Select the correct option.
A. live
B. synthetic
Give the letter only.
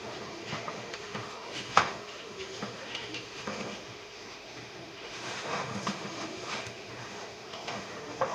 B